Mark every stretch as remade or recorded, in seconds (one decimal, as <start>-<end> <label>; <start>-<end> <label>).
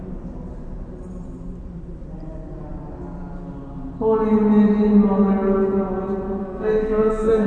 0.0-6.4 recorded; 6.4-7.5 remade